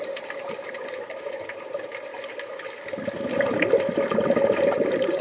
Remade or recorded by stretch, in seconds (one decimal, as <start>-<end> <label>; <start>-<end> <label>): 0.0-2.1 remade; 2.1-4.6 recorded; 4.6-5.2 remade